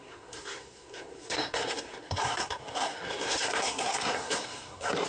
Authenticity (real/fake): fake